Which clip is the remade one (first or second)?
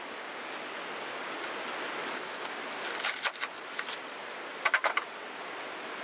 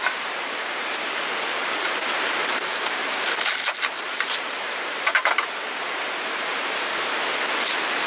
second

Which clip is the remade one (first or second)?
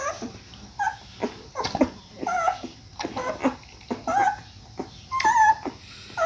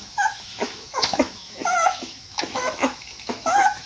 second